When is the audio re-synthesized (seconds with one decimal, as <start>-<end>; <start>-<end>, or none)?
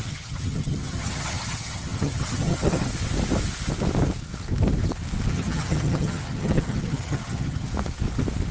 0.0-2.9; 5.3-7.7